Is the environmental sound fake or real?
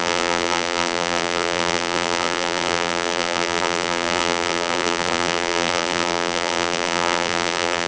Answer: fake